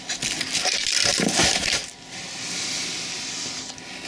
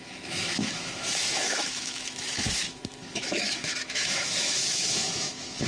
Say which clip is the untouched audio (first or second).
first